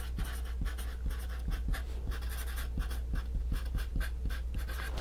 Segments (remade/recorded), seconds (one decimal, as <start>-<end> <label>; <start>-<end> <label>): 0.0-5.0 recorded